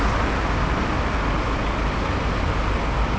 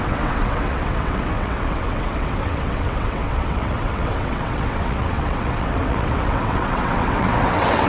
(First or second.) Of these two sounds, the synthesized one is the second